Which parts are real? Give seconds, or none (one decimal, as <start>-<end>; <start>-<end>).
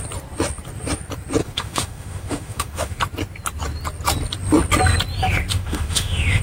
0.0-1.4; 3.0-5.5